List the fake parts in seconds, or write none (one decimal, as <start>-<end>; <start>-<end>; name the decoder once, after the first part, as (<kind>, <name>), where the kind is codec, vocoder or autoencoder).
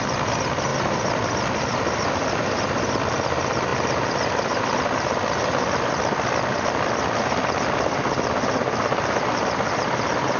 none